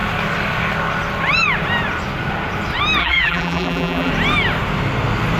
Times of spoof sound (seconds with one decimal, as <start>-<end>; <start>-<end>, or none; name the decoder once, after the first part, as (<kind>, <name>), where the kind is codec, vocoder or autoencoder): 3.0-4.1 (vocoder, BigVGAN v2)